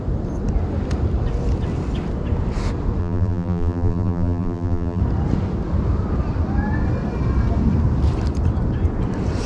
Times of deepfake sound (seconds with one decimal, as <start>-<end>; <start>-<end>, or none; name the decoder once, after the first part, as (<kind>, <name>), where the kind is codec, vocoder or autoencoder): 3.0-5.0 (vocoder, BigVGAN v2)